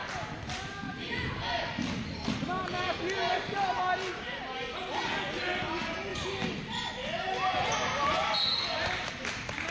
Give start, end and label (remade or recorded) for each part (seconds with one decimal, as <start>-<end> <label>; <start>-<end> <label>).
0.0-9.7 recorded